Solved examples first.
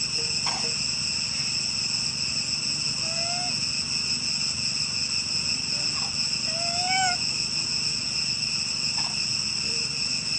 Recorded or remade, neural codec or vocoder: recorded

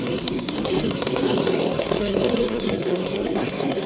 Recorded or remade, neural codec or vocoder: remade, codec, SNAC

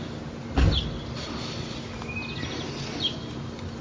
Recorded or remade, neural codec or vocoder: recorded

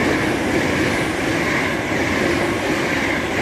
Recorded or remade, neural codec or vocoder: recorded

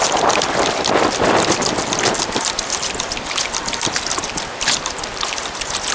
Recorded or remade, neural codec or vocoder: remade, vocoder, BigVGAN v2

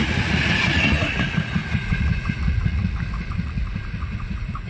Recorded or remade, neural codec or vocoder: remade, vocoder, Vocos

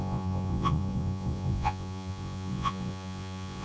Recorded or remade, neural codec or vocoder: remade, vocoder, Vocos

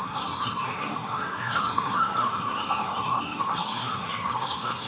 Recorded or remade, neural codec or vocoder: remade, codec, SNAC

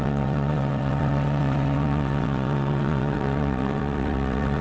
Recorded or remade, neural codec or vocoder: remade, vocoder, WaveNeXt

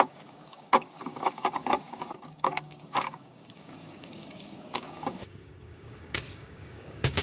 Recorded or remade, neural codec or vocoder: remade, codec, DAC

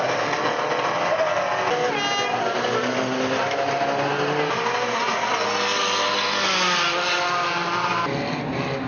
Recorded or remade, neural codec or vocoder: recorded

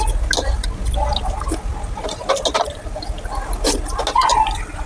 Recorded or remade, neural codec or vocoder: recorded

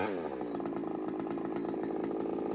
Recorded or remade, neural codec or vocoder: recorded